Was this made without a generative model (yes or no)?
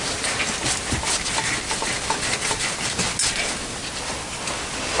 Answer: yes